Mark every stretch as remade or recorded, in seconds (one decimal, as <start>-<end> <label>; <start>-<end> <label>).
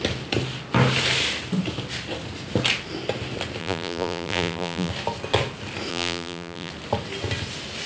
0.0-3.6 recorded; 3.6-4.9 remade; 4.9-5.9 recorded; 5.9-6.7 remade; 6.7-7.9 recorded